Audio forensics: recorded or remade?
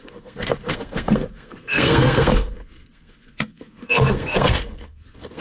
remade